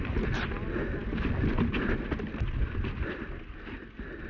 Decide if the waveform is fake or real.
real